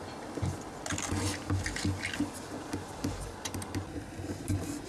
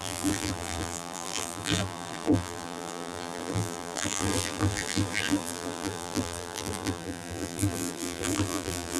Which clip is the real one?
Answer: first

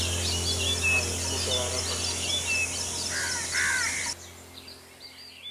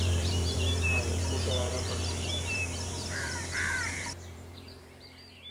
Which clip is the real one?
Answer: first